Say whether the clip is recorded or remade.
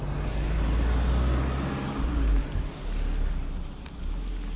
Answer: recorded